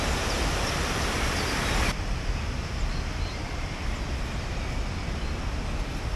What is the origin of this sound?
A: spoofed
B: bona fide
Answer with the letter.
B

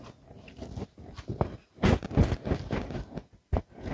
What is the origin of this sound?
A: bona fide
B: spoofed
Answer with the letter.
A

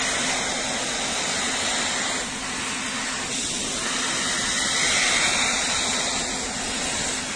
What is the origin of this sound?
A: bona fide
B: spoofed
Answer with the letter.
A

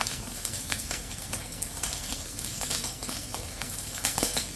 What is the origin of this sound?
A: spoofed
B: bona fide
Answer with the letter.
A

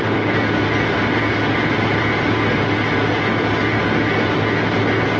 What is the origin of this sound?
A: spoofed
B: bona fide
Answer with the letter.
B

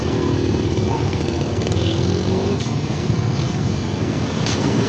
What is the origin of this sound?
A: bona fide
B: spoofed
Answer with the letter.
B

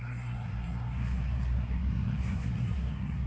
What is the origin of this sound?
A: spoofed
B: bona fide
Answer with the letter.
A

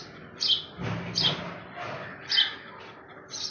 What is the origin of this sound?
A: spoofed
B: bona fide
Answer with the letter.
B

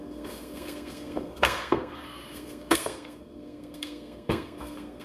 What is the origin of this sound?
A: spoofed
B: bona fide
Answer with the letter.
A